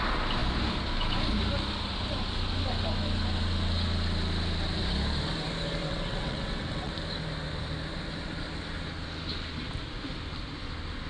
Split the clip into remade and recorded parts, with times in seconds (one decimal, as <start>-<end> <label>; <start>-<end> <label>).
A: 0.0-5.8 recorded; 5.8-6.9 remade; 6.9-11.1 recorded